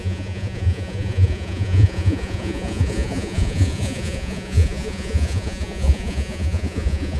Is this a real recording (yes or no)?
no